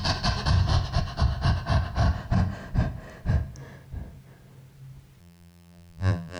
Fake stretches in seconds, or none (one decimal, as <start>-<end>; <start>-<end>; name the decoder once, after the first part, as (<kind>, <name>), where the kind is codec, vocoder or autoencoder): 5.2-6.4 (vocoder, BigVGAN v2)